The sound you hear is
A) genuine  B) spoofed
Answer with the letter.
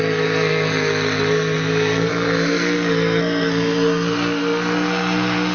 B